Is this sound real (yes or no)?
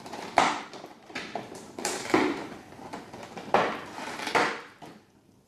no